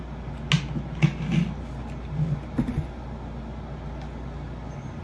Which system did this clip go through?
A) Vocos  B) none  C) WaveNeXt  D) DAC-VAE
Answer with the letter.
B